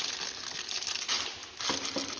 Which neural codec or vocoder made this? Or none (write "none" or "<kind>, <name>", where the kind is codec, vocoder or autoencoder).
none